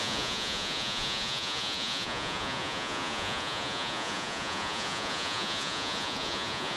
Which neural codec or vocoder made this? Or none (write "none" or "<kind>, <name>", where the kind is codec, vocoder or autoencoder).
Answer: vocoder, Vocos